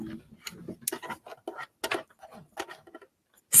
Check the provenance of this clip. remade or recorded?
recorded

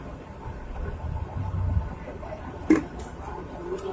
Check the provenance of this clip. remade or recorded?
remade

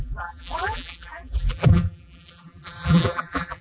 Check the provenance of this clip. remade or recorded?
remade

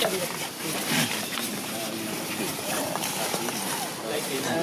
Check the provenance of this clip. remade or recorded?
remade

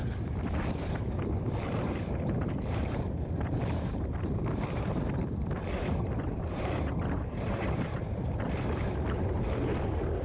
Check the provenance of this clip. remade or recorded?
remade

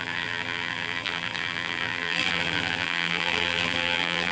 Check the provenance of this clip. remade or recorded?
remade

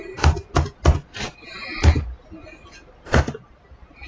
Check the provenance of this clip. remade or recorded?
recorded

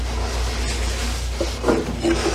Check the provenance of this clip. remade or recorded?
recorded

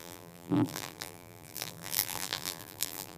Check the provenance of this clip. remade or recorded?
remade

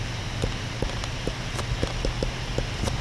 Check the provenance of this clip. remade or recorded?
recorded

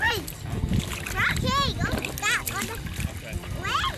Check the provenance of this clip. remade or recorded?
recorded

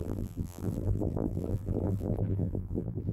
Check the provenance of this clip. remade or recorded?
remade